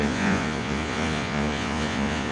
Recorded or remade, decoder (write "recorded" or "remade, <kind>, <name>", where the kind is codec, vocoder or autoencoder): remade, vocoder, Vocos